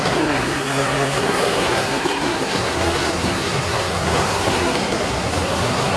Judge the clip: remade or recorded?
remade